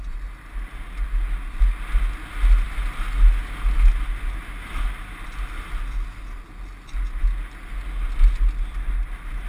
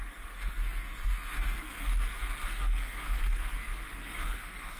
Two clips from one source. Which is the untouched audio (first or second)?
first